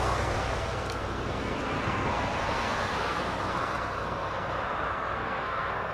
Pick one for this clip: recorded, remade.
remade